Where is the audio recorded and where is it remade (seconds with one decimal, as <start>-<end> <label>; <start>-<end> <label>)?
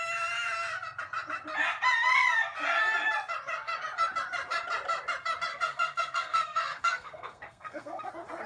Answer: 0.0-5.5 recorded; 5.5-8.1 remade; 8.1-8.5 recorded